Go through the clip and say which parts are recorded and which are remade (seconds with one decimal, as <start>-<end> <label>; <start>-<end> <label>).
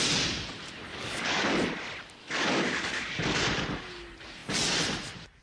0.0-0.9 recorded; 0.9-1.5 remade; 1.5-2.2 recorded; 2.2-3.2 remade; 3.2-5.4 recorded